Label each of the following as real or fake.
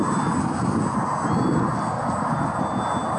real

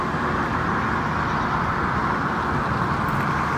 real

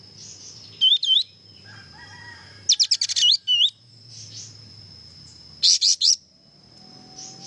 real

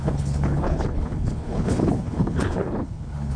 fake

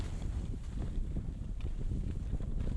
real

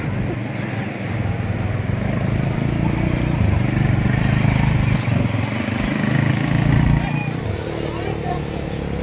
real